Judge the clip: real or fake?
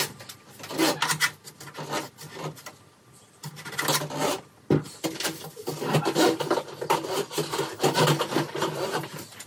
real